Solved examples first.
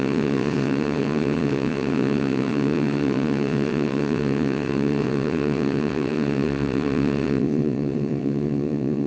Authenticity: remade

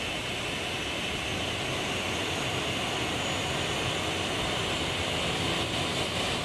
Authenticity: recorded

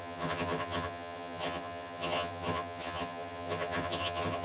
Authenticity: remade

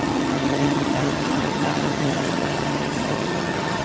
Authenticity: remade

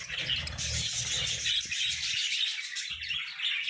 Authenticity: recorded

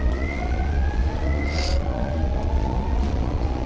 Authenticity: remade